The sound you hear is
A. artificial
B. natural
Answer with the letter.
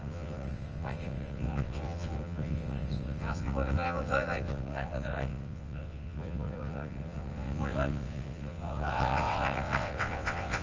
A